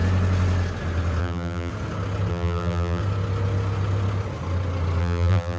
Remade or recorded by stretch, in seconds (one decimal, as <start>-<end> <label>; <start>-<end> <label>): 0.0-1.2 recorded; 1.2-1.7 remade; 1.7-2.3 recorded; 2.3-3.0 remade; 3.0-5.0 recorded; 5.0-5.6 remade